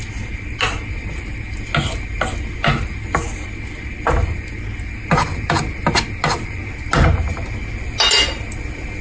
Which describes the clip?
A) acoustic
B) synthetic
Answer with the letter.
A